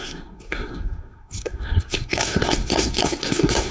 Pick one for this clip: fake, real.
fake